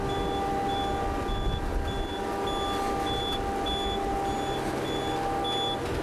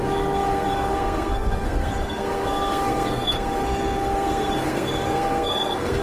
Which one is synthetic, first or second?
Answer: second